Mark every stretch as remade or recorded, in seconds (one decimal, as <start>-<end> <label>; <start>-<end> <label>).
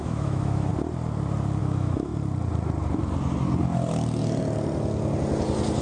0.0-0.7 remade; 0.7-1.6 recorded; 1.6-2.1 remade; 2.1-5.8 recorded